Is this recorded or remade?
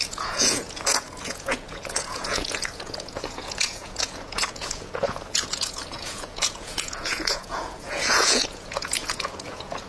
remade